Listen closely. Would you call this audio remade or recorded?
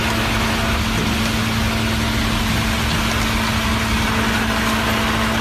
recorded